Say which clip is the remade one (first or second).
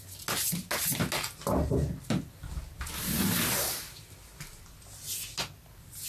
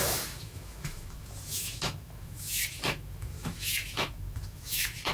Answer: second